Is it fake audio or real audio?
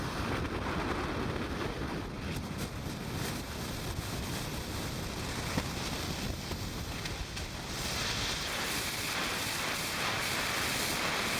real